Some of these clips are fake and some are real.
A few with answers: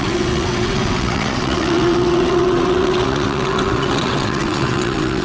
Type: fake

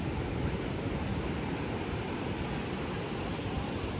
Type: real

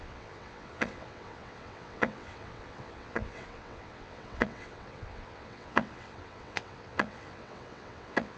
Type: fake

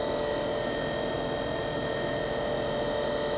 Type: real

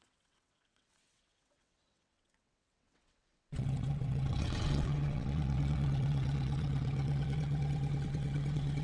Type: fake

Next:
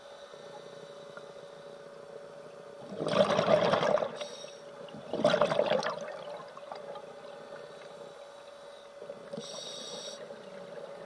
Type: real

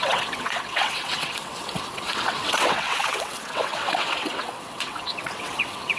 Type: fake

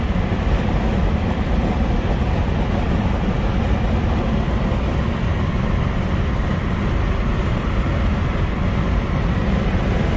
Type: real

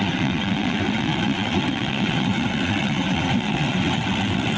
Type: fake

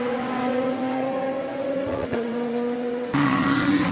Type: fake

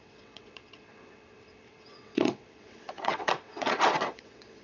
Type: fake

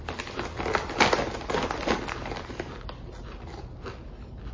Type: real